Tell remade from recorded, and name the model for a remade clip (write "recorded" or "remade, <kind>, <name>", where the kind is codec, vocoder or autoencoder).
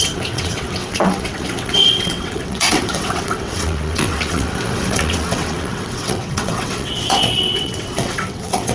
remade, vocoder, WaveNeXt